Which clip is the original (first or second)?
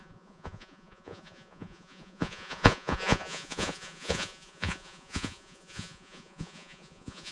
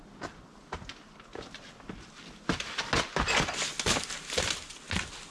second